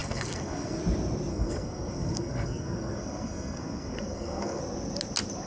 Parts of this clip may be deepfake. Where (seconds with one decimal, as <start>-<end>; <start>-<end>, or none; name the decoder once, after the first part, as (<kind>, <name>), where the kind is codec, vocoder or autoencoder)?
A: 0.0-0.8 (codec, SNAC); 1.3-4.6

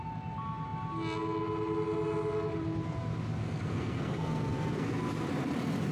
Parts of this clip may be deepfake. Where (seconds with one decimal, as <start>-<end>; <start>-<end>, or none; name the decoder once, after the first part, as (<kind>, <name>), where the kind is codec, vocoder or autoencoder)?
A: 3.4-5.0 (codec, SNAC)

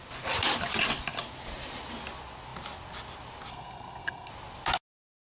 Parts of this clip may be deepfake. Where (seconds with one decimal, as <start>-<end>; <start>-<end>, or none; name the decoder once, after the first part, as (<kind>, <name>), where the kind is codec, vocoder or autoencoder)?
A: 3.5-4.3 (codec, SNAC)

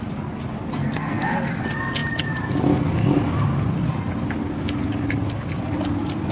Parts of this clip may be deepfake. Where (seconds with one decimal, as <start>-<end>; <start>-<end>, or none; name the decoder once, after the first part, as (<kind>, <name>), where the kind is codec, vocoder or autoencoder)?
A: 0.8-1.5 (codec, SNAC)

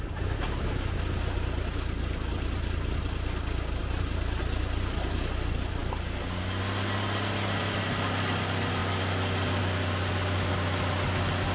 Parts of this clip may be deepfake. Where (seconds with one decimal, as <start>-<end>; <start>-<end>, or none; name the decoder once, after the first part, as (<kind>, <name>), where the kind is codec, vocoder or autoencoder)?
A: none

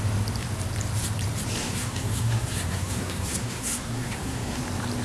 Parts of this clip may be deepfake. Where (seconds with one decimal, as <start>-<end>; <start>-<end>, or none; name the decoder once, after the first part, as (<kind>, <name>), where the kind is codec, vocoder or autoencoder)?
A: 1.6-4.6 (codec, SNAC)

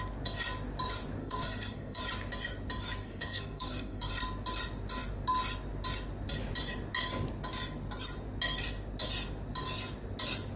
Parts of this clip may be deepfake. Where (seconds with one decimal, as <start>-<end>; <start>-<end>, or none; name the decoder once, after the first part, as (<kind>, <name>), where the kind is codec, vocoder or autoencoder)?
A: 1.2-2.0 (codec, SNAC); 3.0-4.1